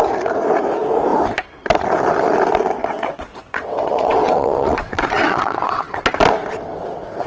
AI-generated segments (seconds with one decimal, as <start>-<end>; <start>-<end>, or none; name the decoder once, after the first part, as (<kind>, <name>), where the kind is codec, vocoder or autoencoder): 2.8-6.0 (vocoder, WaveNeXt)